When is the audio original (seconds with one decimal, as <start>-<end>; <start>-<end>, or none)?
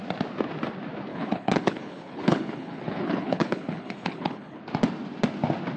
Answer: 0.0-1.1; 4.6-5.8